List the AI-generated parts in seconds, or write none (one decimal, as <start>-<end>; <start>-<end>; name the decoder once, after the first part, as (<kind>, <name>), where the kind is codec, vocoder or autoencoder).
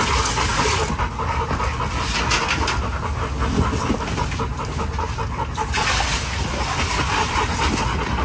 none